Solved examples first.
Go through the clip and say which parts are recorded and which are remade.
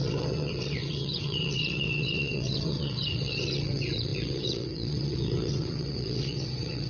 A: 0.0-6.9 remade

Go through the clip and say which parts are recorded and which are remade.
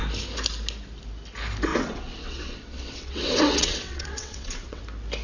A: 0.0-1.7 recorded; 1.7-4.8 remade; 4.8-5.2 recorded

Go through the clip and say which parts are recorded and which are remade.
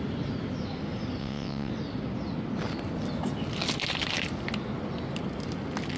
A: 0.0-1.2 recorded; 1.2-1.7 remade; 1.7-6.0 recorded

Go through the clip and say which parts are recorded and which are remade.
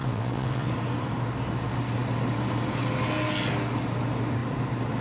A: 0.0-0.7 remade; 0.7-5.0 recorded